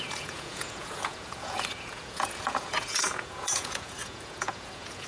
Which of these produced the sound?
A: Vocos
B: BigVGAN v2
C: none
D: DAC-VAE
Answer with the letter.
A